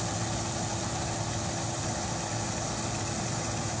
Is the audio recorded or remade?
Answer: recorded